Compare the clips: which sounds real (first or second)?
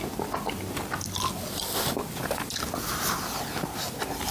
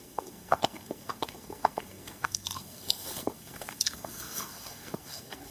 first